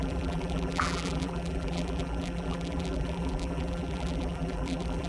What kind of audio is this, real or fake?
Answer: fake